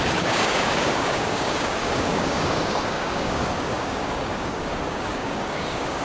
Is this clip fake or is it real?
fake